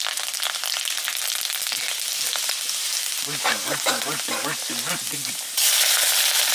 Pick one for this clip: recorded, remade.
recorded